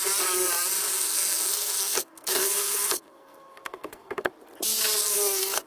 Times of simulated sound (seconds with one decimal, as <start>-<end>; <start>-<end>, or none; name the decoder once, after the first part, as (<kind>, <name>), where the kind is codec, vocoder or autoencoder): 0.9-4.3 (codec, SNAC); 5.0-5.7